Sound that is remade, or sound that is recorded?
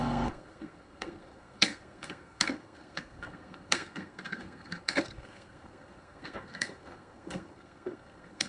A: remade